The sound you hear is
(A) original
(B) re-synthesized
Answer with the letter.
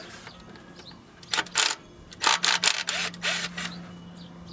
A